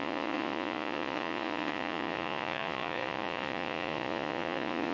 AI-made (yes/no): yes